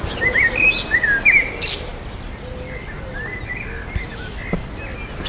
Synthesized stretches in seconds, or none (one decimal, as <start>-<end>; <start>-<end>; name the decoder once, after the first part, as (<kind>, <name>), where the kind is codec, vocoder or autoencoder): none

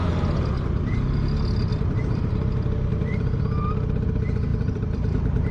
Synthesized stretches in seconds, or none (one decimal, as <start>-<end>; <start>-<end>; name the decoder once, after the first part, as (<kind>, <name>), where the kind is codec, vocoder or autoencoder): 1.7-2.3 (vocoder, BigVGAN v2); 2.9-3.4; 4.5-5.5